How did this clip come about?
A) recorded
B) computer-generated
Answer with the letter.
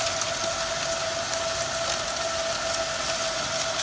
A